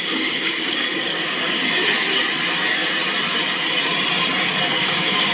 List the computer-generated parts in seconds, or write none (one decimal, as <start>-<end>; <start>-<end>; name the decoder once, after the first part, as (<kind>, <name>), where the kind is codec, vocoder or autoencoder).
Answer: 0.0-1.6 (codec, DAC); 4.8-5.3